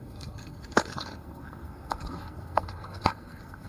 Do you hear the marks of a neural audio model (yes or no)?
yes